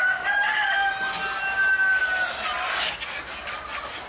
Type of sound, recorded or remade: recorded